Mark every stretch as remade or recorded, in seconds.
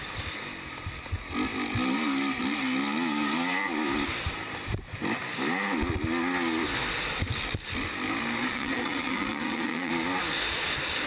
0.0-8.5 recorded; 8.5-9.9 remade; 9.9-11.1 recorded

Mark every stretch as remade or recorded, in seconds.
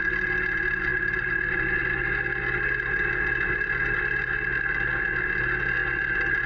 0.0-6.5 recorded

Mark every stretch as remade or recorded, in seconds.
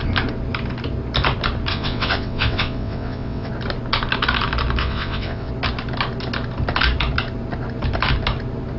0.0-1.7 recorded; 1.7-3.5 remade; 3.5-4.8 recorded; 4.8-5.5 remade; 5.5-8.8 recorded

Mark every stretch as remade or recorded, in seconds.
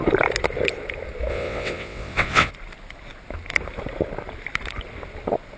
0.0-1.3 recorded; 1.3-2.5 remade; 2.5-5.6 recorded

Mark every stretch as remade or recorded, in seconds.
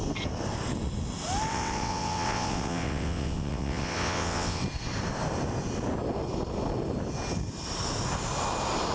0.0-1.5 recorded; 1.5-4.6 remade; 4.6-8.9 recorded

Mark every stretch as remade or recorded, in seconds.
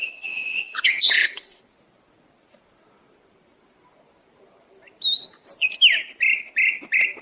0.0-1.6 remade; 1.6-7.2 recorded